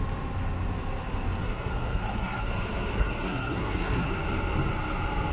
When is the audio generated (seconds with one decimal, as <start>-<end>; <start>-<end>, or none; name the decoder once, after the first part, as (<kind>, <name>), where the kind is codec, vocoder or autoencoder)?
1.4-2.5 (codec, SNAC); 2.9-4.1